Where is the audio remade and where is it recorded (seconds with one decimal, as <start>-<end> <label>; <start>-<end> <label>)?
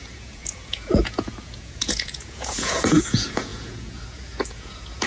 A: 0.0-5.1 remade